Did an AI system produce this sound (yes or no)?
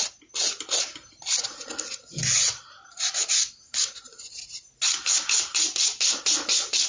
no